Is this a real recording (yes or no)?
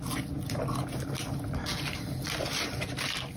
yes